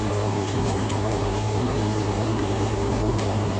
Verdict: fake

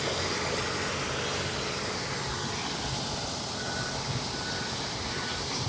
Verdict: real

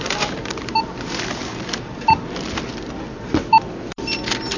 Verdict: real